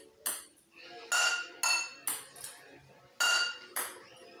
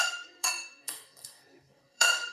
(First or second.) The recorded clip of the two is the first